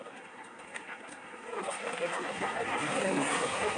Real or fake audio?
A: fake